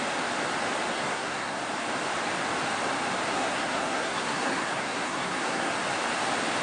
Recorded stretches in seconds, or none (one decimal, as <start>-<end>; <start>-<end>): 0.0-0.9; 1.6-3.3; 5.7-6.6